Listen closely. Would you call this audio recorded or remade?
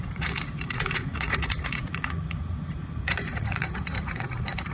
remade